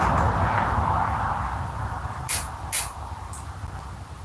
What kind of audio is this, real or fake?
real